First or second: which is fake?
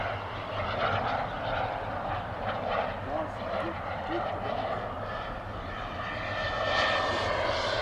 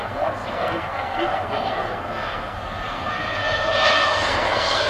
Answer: second